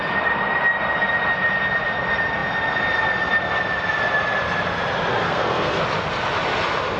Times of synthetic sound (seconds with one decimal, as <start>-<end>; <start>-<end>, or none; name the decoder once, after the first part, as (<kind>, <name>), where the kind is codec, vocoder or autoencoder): 5.1-5.8 (codec, SNAC)